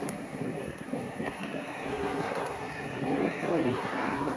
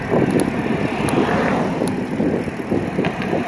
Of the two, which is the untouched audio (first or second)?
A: second